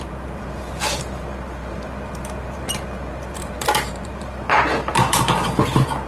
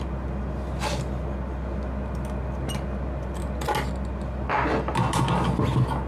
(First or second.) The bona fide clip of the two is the second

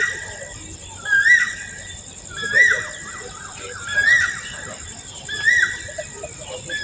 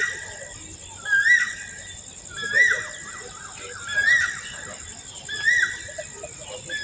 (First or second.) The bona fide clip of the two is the second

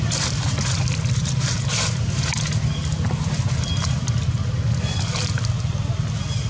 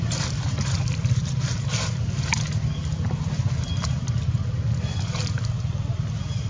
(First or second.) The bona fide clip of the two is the first